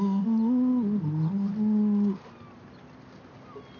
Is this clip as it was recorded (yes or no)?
yes